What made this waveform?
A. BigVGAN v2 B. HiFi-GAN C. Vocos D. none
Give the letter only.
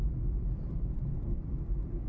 A